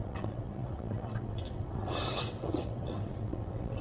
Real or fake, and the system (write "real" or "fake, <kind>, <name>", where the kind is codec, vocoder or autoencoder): fake, vocoder, WaveNeXt